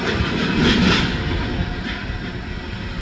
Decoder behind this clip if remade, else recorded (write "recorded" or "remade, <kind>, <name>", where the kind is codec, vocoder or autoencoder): recorded